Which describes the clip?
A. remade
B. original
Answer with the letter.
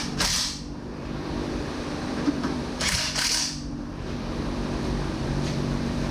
A